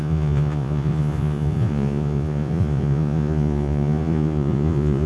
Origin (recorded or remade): remade